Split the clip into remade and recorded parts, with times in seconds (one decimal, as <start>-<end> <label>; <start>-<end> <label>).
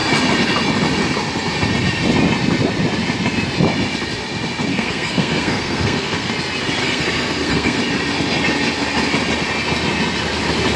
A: 0.0-4.7 recorded; 4.7-6.3 remade; 6.3-6.8 recorded; 6.8-7.8 remade; 7.8-10.8 recorded